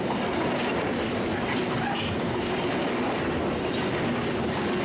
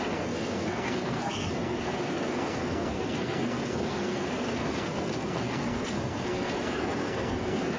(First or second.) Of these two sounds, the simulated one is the second